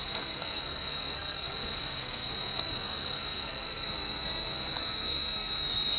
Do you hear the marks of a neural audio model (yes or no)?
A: yes